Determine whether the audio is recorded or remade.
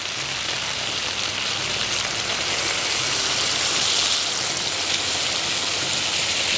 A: recorded